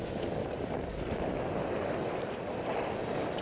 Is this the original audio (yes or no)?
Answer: yes